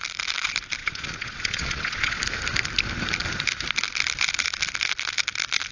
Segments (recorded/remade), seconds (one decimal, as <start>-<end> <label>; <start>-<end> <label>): 0.0-0.8 recorded; 0.8-2.2 remade; 2.2-5.7 recorded